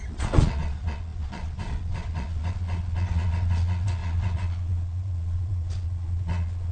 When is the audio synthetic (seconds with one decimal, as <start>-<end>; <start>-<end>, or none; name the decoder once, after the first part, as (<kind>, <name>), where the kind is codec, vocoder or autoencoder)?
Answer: 0.0-6.7 (vocoder, Vocos)